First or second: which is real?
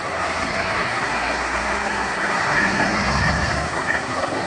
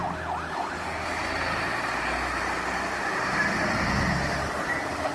second